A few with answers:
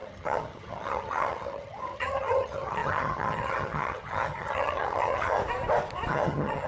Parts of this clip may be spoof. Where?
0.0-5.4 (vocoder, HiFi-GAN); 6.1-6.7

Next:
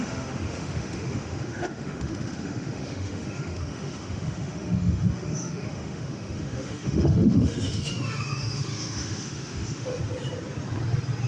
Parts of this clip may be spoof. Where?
0.0-10.0 (autoencoder, DAC-VAE)

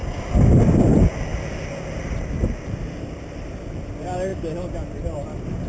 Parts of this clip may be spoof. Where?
none

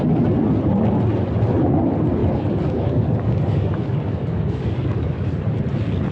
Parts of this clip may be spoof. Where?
2.2-5.3 (codec, DAC)

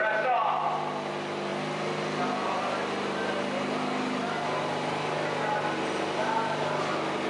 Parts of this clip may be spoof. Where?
none

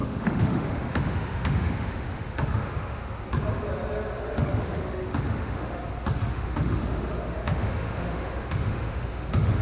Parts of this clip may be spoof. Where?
0.0-3.0 (autoencoder, DAC-VAE); 4.2-5.8; 6.3-9.6

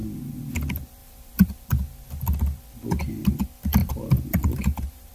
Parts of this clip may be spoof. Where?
1.0-1.6 (vocoder, BigVGAN v2); 3.8-5.1